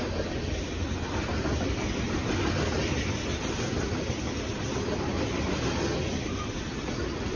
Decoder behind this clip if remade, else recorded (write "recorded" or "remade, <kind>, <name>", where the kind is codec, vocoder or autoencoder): recorded